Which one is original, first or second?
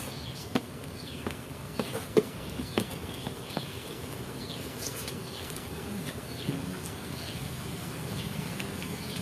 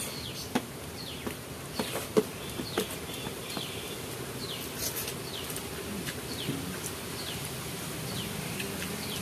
second